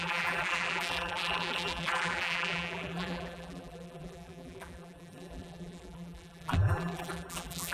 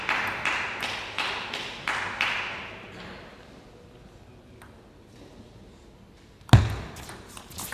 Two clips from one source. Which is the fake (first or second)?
first